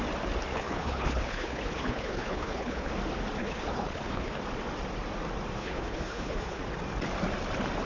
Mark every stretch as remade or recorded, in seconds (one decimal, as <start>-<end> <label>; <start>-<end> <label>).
0.0-0.5 recorded; 0.5-2.9 remade; 2.9-3.4 recorded; 3.4-4.4 remade; 4.4-5.6 recorded; 5.6-6.6 remade; 6.6-7.9 recorded